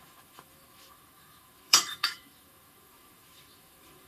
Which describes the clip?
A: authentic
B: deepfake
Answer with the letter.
B